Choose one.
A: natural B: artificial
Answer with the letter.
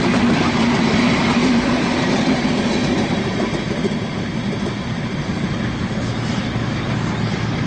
A